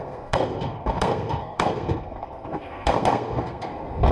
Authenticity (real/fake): fake